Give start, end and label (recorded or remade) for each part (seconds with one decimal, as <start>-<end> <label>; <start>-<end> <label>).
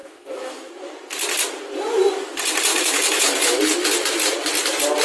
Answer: 0.0-0.7 remade; 0.7-2.7 recorded; 2.7-3.6 remade; 3.6-5.0 recorded